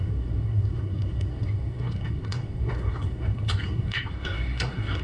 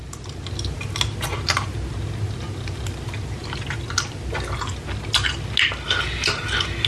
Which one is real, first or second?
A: second